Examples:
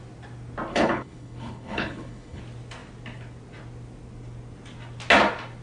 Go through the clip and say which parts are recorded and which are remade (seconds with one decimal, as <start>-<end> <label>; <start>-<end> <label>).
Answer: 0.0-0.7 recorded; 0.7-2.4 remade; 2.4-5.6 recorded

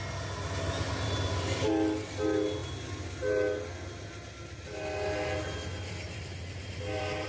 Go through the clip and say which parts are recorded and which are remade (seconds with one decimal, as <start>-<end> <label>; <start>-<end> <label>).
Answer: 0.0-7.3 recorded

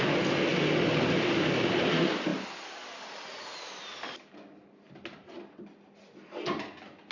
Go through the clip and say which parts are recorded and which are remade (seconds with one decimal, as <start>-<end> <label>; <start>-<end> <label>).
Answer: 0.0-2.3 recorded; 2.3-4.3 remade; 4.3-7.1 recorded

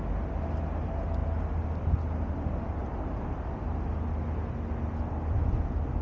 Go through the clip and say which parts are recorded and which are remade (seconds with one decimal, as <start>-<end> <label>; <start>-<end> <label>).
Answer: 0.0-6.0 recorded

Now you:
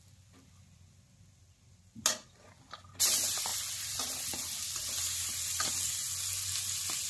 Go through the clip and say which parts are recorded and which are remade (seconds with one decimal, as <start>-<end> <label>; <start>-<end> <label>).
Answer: 0.0-7.1 recorded

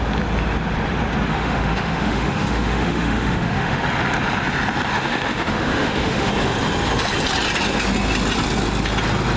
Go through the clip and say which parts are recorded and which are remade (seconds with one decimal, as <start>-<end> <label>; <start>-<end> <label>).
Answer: 0.0-1.3 recorded; 1.3-3.8 remade; 3.8-4.9 recorded; 4.9-6.3 remade; 6.3-9.4 recorded

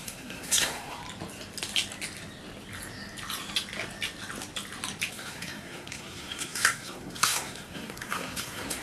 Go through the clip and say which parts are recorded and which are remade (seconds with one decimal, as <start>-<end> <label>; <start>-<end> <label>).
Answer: 0.0-1.0 remade; 1.0-5.1 recorded; 5.1-8.8 remade

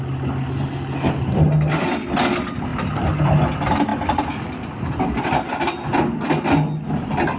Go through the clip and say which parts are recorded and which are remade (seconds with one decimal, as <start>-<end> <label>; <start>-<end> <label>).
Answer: 0.0-7.4 recorded